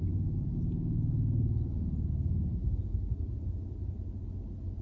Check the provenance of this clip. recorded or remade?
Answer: recorded